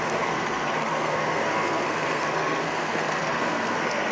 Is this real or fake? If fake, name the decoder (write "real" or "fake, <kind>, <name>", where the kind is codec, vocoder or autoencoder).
fake, codec, SNAC